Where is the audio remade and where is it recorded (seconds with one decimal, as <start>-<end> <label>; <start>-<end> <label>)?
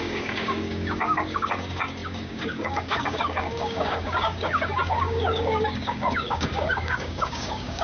0.0-7.8 remade